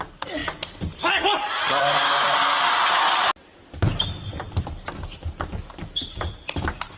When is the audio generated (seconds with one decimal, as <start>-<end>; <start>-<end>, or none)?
none